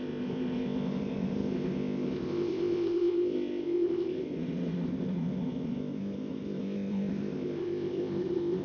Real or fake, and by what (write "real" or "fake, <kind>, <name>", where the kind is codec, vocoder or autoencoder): fake, codec, ZipCodec